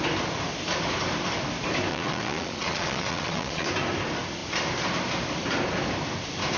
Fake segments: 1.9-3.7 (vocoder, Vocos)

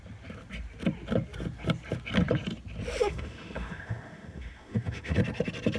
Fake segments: 3.0-5.2 (autoencoder, DAC-VAE)

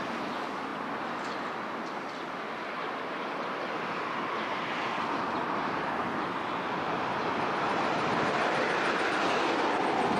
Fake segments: none

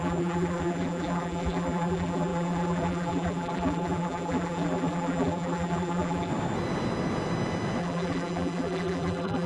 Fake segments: 0.0-6.3 (vocoder, BigVGAN v2); 7.8-9.5

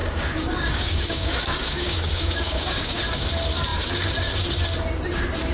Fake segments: 0.0-3.3 (codec, DAC)